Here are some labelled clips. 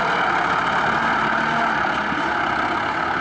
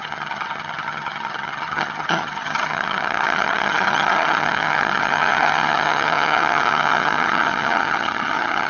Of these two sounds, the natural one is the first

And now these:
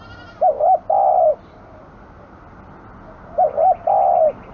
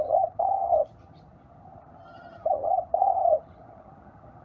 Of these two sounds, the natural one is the first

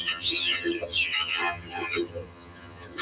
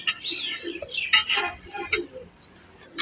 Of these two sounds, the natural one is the second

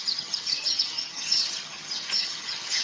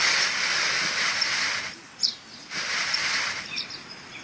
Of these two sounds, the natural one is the second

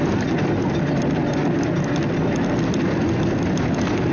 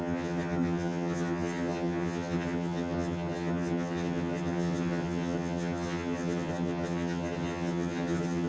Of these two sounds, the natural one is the first